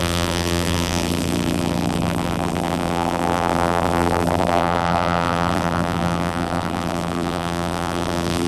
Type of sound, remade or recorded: remade